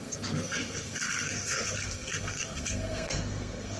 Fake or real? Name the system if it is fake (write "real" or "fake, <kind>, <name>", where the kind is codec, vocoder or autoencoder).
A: fake, codec, SNAC